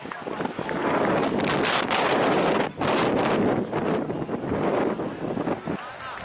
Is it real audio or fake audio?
real